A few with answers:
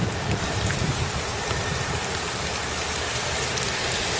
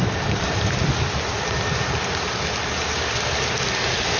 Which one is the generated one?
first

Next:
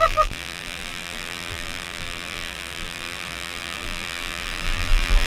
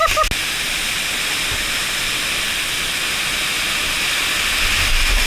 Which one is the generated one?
first